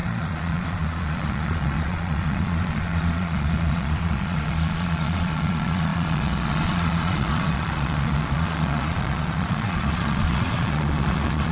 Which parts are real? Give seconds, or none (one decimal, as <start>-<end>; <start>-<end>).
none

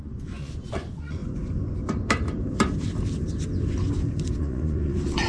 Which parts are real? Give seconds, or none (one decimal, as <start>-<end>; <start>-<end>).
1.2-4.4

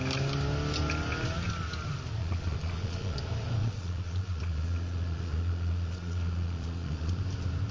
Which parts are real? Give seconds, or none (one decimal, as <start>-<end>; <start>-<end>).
0.0-2.2; 3.2-3.6; 7.2-7.7

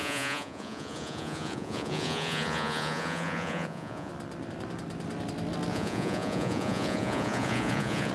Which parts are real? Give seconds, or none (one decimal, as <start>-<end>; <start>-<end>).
4.1-5.7

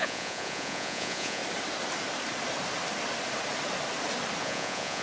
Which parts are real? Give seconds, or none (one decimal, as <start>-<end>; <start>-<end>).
1.4-4.4

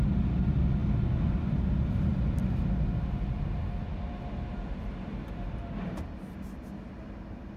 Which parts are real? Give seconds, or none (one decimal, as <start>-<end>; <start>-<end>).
0.0-7.6

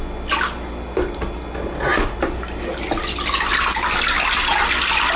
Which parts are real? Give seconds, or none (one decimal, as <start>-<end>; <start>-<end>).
0.0-5.2

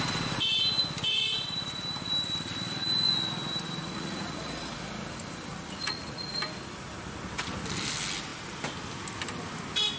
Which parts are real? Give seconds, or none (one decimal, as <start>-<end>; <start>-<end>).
0.0-3.8; 4.7-5.5; 6.4-10.0